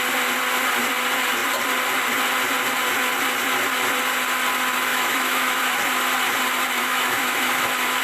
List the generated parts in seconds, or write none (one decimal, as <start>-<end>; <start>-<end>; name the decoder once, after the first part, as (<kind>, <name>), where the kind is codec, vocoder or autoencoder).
4.9-5.6 (autoencoder, DAC-VAE); 6.8-8.0